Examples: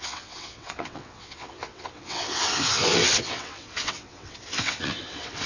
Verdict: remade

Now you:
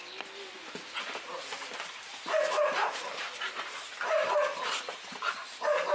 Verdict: recorded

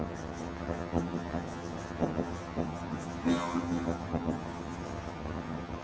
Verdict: remade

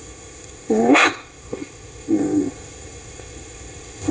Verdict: remade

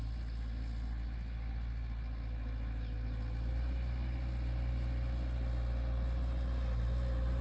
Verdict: recorded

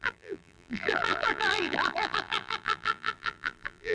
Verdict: remade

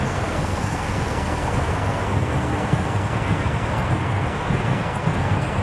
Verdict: remade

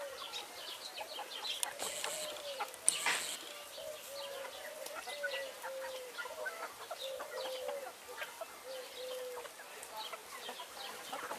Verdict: recorded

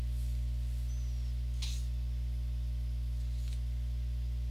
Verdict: recorded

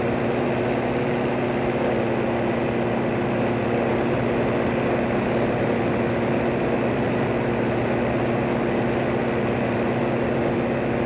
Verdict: recorded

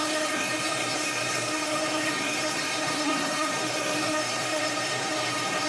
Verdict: remade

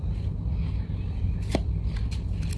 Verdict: recorded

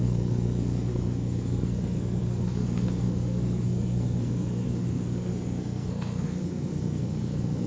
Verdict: remade